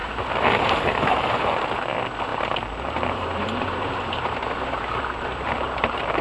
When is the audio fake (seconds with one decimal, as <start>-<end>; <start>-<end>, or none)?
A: 0.0-1.7; 2.3-6.2